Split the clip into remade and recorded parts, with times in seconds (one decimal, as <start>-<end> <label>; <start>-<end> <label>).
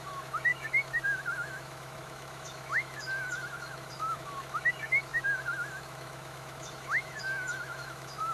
0.0-8.3 remade